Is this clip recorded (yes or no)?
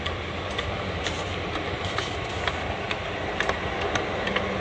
yes